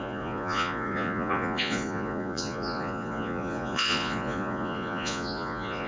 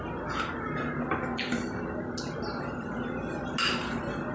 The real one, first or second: second